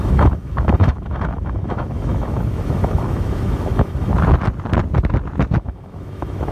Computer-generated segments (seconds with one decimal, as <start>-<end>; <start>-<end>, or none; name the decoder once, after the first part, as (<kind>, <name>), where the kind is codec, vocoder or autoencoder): 0.0-4.1 (autoencoder, DAC-VAE); 5.6-6.5